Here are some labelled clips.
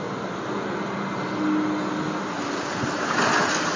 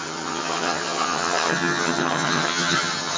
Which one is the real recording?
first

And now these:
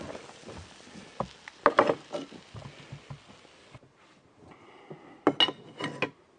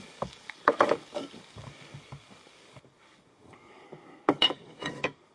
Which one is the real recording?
first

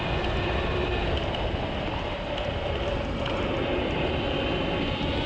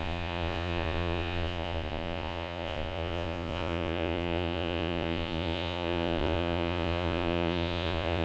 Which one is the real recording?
first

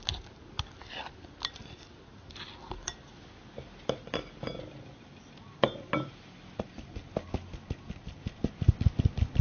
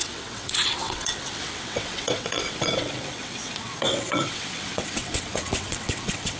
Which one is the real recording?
first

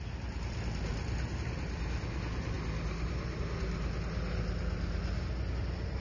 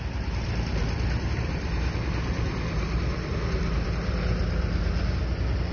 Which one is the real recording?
first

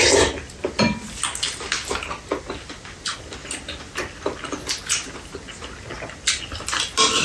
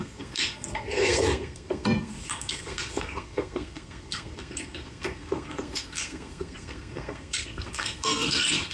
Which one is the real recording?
first